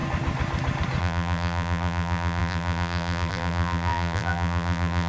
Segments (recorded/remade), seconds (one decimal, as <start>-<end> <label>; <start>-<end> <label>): 0.0-1.0 recorded; 1.0-5.1 remade